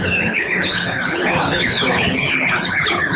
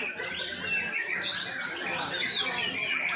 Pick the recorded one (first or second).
second